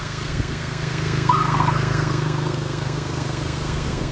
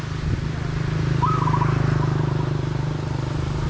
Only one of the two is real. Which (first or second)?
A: second